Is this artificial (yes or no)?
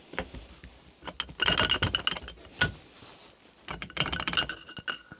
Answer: no